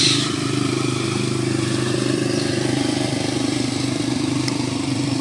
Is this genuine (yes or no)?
no